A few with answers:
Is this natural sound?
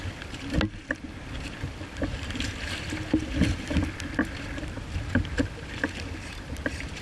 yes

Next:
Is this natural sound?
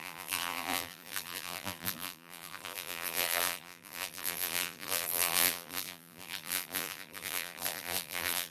no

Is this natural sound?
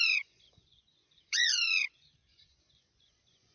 no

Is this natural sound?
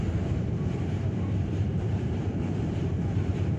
no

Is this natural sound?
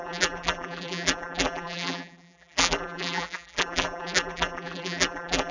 no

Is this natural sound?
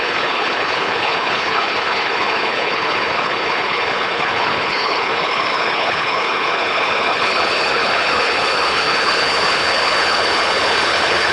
no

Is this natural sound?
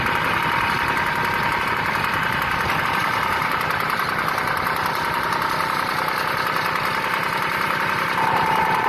yes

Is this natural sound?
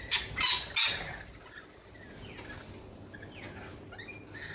yes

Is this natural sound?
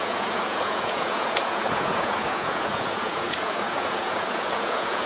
no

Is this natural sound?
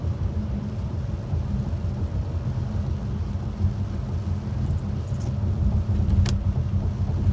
yes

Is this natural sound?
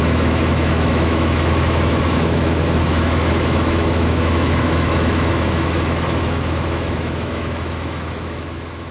no